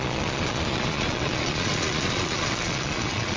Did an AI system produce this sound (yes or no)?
yes